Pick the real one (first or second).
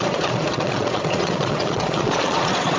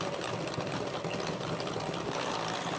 second